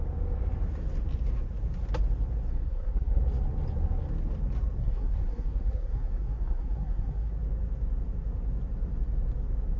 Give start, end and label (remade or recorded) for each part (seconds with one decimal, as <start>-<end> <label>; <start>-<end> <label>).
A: 0.0-2.5 recorded; 2.5-3.2 remade; 3.2-4.8 recorded; 4.8-7.3 remade; 7.3-9.8 recorded